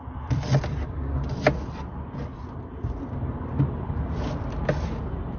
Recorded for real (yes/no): no